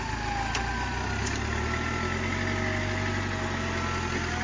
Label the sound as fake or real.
real